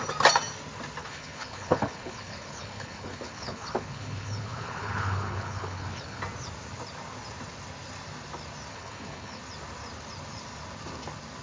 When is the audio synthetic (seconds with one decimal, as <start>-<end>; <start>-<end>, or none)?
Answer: 1.0-6.2; 8.7-9.4